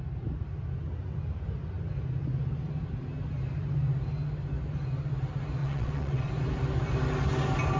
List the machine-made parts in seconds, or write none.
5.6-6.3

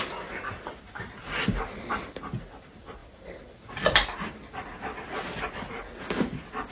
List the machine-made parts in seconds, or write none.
none

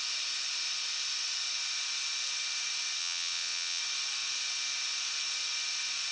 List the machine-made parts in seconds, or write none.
3.0-3.8

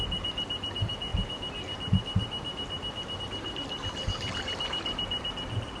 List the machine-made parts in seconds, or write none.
none